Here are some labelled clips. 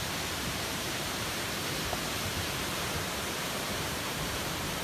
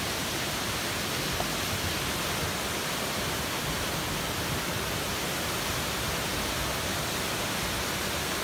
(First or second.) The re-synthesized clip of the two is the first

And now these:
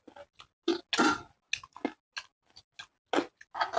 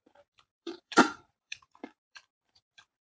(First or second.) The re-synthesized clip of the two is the second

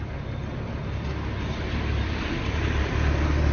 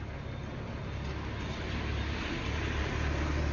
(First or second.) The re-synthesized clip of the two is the first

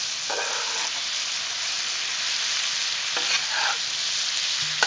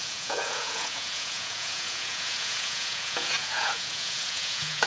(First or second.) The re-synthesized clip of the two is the second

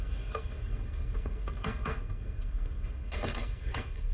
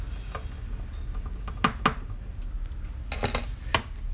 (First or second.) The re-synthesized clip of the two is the first